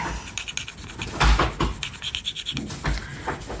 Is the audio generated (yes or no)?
no